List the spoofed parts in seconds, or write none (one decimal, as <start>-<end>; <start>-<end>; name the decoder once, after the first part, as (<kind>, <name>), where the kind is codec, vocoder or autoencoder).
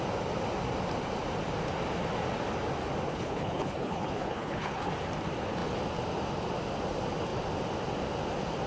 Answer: 3.1-4.9 (codec, HILCodec)